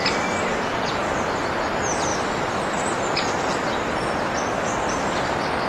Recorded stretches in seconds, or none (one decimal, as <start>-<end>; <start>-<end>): 0.0-0.5; 1.4-5.7